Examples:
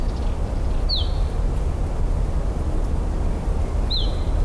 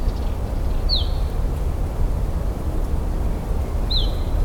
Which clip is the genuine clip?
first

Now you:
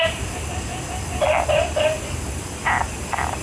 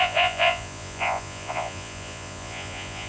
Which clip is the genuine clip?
first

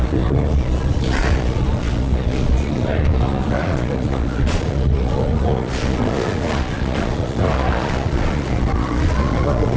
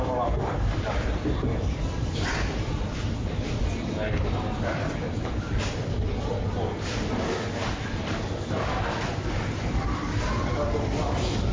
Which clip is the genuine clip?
second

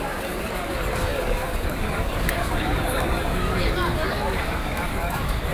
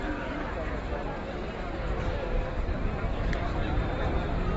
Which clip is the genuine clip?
second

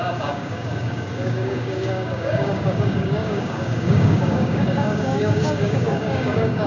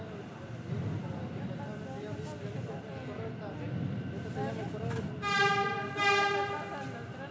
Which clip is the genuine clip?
second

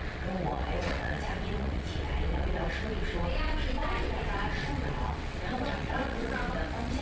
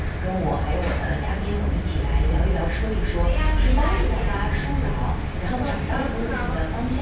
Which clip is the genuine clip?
second